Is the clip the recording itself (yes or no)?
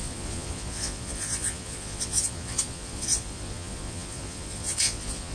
no